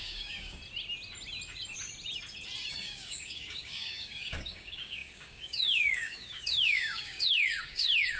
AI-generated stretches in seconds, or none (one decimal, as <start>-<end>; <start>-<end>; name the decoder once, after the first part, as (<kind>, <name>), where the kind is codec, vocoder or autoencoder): 0.0-0.6 (codec, DAC); 2.7-8.2